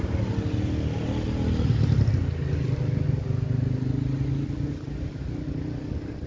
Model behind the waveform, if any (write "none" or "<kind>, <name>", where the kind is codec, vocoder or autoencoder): none